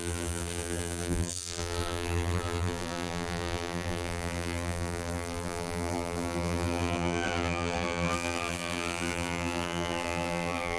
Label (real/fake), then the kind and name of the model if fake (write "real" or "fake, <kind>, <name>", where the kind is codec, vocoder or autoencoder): fake, vocoder, BigVGAN v2